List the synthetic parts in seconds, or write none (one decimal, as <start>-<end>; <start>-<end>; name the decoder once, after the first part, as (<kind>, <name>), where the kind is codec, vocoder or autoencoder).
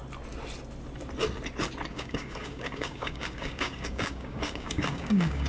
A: 1.9-5.5 (codec, DAC)